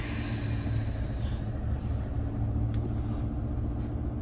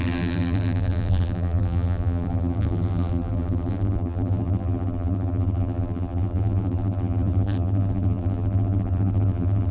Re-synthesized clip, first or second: second